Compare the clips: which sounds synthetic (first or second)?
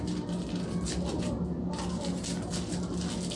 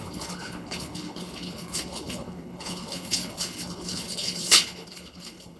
second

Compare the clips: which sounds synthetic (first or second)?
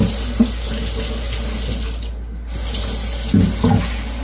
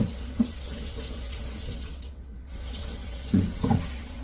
second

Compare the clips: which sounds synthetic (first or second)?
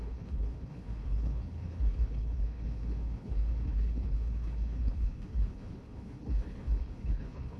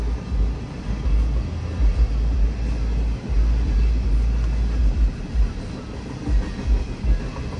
first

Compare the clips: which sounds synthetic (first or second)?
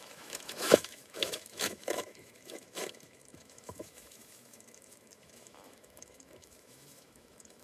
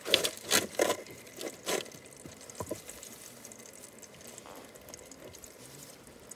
first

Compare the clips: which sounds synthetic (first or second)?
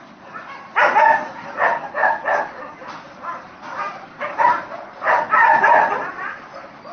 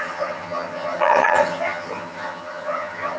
second